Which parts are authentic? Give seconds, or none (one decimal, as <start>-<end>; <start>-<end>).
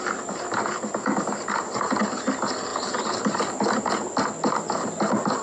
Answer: 0.0-5.4